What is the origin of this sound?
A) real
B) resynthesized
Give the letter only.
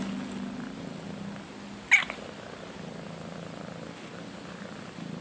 A